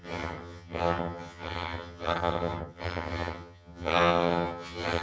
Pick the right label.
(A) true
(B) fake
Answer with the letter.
B